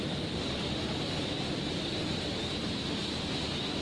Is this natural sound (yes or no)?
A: yes